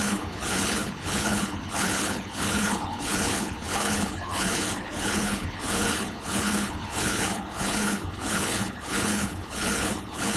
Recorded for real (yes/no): no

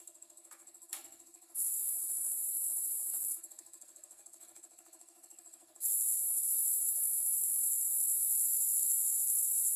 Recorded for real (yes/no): no